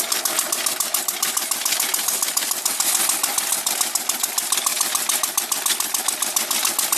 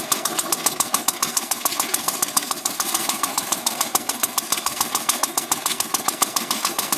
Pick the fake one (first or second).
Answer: second